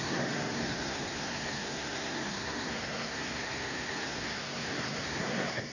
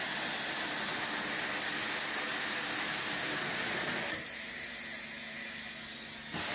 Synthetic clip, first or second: first